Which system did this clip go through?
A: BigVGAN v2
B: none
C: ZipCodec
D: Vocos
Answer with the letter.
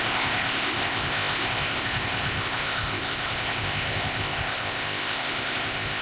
C